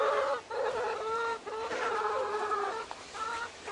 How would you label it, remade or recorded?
remade